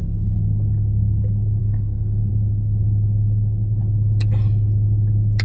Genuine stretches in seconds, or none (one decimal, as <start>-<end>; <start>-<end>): 0.0-1.6; 2.3-5.4